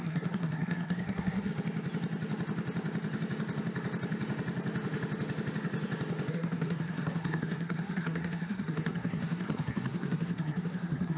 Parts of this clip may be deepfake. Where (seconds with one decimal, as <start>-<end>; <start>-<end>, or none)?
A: 0.0-1.5; 6.3-11.2